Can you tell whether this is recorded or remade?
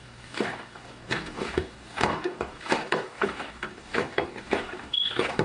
remade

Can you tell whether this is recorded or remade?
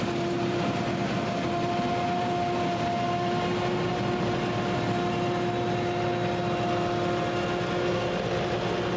recorded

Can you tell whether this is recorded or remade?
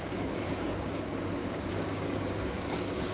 remade